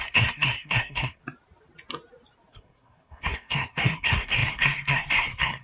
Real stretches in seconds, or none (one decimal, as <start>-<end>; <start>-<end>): 1.2-2.5